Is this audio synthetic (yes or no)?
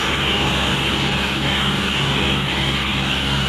yes